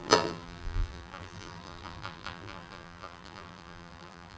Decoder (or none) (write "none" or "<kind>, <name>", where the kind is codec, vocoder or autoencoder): vocoder, BigVGAN v2